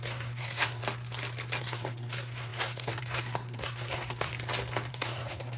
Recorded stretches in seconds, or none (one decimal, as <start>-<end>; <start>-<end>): 0.8-1.6; 4.3-4.9